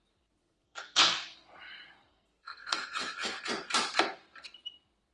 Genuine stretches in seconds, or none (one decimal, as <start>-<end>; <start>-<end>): 0.0-0.4; 1.1-2.1; 3.4-5.1